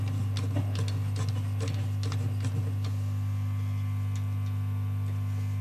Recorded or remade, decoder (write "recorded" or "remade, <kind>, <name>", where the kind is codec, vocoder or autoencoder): recorded